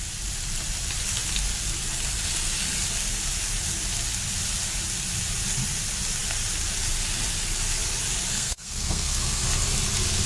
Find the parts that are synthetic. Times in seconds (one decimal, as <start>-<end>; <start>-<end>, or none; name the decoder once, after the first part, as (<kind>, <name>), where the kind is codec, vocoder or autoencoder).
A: 8.3-9.4 (codec, SNAC)